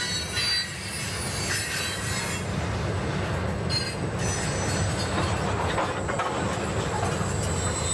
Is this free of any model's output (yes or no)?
yes